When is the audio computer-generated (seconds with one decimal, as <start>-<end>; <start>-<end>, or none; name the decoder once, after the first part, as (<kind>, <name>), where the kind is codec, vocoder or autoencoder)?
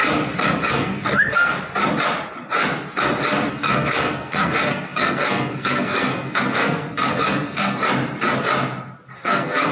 0.7-1.5 (codec, SNAC); 3.5-7.8; 9.1-9.7